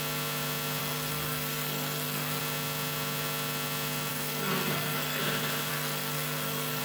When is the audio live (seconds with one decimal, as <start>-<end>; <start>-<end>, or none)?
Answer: 0.0-0.8; 2.4-4.1; 5.2-5.7